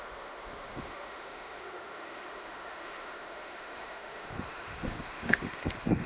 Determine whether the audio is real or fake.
fake